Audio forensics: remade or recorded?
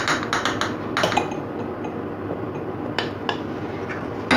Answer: recorded